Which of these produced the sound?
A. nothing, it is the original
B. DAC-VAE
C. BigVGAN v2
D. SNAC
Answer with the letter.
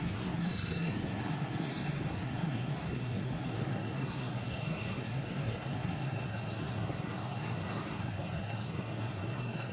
D